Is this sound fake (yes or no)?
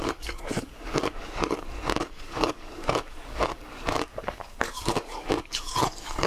yes